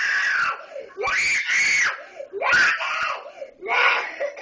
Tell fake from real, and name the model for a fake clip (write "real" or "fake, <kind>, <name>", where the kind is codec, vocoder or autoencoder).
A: real